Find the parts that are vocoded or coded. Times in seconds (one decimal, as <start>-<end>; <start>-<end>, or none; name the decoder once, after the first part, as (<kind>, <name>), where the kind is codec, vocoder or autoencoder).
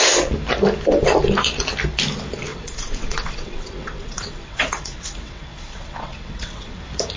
2.5-6.8 (vocoder, WaveNeXt)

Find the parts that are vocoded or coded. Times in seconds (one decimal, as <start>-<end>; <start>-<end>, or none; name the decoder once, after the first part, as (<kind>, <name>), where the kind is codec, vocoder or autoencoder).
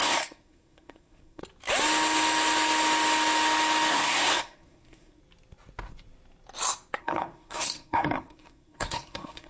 0.0-1.4 (codec, SNAC); 3.9-5.2; 7.0-9.5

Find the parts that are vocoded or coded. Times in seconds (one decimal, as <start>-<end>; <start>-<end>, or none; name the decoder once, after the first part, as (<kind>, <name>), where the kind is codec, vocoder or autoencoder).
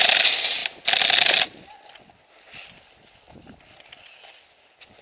none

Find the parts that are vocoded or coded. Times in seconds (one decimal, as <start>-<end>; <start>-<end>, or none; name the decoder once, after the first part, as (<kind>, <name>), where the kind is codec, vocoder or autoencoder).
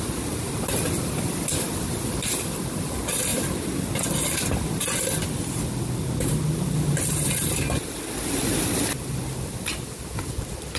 none